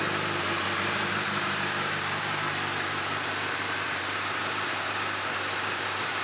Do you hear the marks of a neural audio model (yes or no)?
yes